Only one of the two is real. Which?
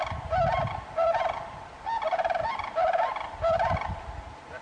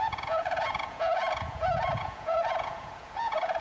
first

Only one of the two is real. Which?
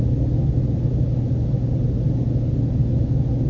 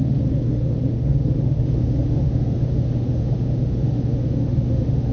first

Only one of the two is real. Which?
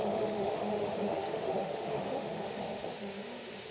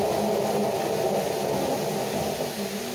second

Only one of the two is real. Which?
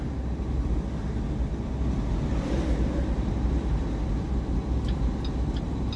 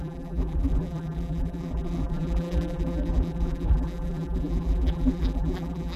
first